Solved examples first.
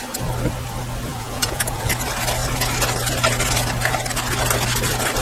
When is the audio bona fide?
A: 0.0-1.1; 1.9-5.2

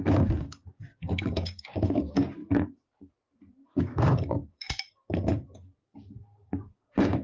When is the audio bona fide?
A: 2.4-3.6

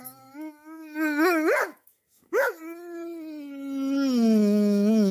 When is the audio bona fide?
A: 2.6-4.4

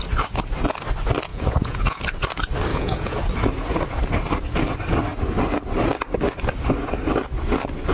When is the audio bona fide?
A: 0.0-1.3; 2.0-2.7; 3.2-7.9

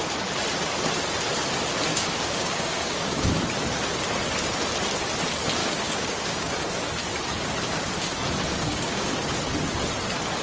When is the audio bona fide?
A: 0.0-1.9; 3.4-5.6; 6.5-8.6; 9.1-10.4

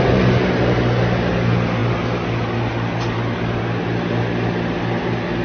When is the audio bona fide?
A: 0.0-5.4

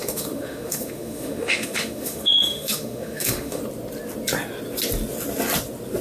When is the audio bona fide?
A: 3.6-6.0

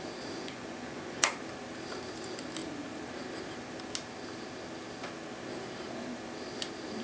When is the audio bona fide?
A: 0.0-0.4; 1.3-7.0